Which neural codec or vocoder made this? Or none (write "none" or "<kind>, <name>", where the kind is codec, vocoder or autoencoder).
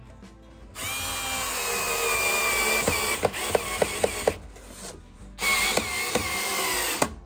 none